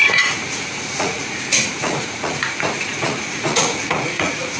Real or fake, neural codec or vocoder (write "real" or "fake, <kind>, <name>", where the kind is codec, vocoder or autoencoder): fake, vocoder, Vocos